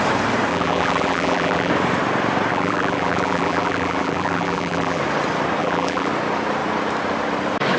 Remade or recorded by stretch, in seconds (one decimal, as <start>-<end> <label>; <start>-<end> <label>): 0.0-0.5 recorded; 0.5-1.7 remade; 1.7-2.5 recorded; 2.5-5.0 remade; 5.0-5.6 recorded; 5.6-6.1 remade; 6.1-7.8 recorded